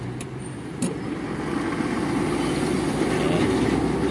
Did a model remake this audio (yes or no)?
no